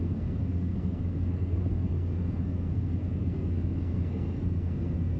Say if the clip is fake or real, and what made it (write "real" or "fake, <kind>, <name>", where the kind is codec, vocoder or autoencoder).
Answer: fake, codec, SNAC